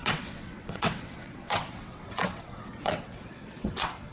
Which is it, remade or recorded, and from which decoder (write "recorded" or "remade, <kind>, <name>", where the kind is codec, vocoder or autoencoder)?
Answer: remade, vocoder, WaveNeXt